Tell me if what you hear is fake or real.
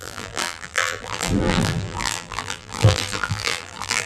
fake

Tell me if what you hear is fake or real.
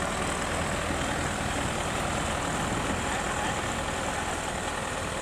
real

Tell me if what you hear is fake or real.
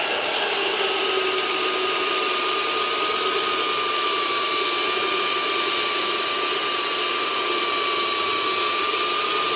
real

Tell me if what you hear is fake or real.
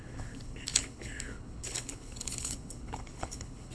fake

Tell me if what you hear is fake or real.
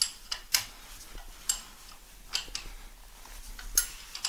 real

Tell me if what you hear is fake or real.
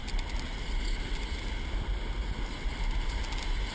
real